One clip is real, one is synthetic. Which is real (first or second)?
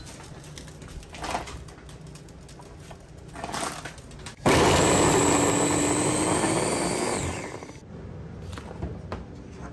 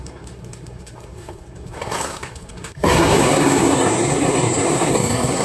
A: first